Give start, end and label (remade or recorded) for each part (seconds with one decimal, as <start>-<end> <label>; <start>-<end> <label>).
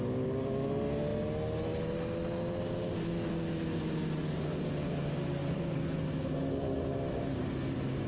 0.0-5.4 recorded; 5.4-6.0 remade; 6.0-8.1 recorded